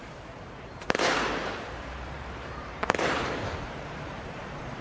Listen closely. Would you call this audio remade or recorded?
remade